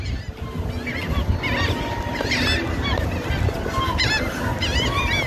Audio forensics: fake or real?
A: real